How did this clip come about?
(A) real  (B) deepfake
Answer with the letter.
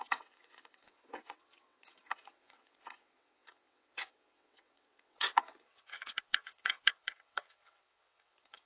B